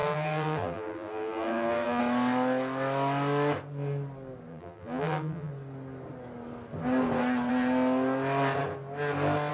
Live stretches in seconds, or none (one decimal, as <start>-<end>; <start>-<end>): 2.0-4.5; 5.5-9.5

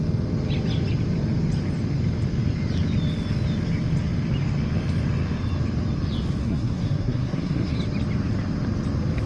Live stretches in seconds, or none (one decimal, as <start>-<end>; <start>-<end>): 0.0-6.4; 7.8-9.3

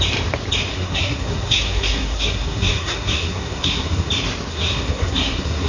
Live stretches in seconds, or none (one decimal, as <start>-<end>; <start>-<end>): 0.0-0.7; 4.1-4.5

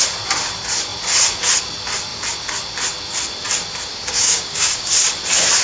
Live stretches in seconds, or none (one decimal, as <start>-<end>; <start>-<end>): 0.0-3.9; 5.1-5.6

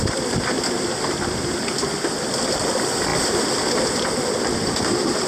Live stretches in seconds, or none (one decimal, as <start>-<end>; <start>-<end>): 0.0-5.3

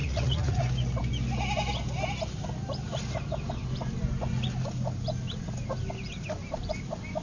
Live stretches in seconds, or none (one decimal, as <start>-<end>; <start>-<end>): 0.6-7.2

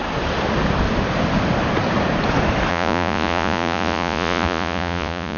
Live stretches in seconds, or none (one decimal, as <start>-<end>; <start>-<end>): 0.0-2.7

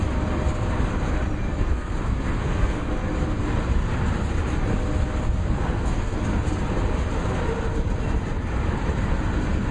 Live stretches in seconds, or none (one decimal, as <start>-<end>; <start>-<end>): 0.0-1.7; 2.9-5.4; 6.2-9.7